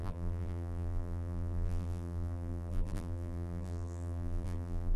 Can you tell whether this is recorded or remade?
remade